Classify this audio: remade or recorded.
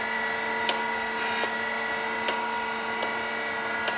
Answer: recorded